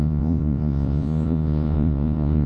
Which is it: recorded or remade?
remade